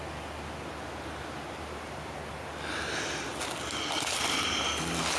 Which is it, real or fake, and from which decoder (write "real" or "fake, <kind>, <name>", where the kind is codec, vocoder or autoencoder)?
real